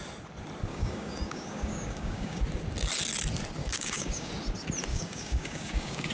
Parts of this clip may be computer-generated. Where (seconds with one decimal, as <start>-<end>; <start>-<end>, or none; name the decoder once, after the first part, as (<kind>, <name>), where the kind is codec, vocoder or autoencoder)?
0.7-2.4 (codec, DAC); 3.6-4.3; 4.9-6.1